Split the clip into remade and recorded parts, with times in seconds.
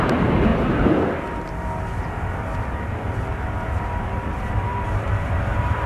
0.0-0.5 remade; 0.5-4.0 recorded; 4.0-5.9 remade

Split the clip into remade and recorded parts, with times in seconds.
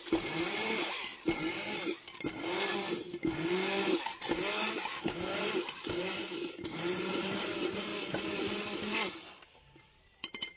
0.0-1.1 remade; 1.1-5.0 recorded; 5.0-6.2 remade; 6.2-6.7 recorded; 6.7-7.9 remade; 7.9-9.8 recorded; 9.8-10.6 remade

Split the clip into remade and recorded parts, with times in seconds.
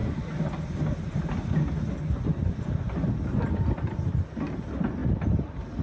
0.0-5.8 recorded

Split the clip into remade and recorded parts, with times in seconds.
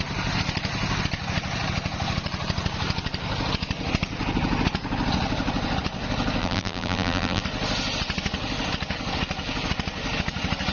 0.0-6.4 recorded; 6.4-7.4 remade; 7.4-10.7 recorded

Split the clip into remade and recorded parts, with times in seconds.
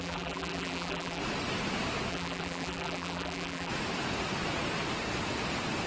0.0-1.2 remade; 1.2-2.1 recorded; 2.1-3.7 remade; 3.7-5.9 recorded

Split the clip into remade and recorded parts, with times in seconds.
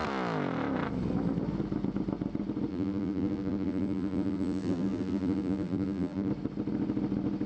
0.0-2.7 recorded; 2.7-6.3 remade; 6.3-7.5 recorded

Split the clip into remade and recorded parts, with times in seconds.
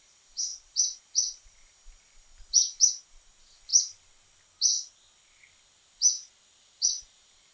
0.0-3.7 remade; 3.7-6.6 recorded; 6.6-7.5 remade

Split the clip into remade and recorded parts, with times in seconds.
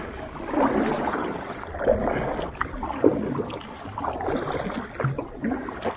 0.0-6.0 recorded